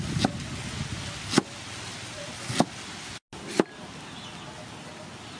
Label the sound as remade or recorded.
recorded